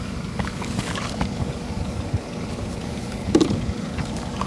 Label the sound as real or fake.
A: fake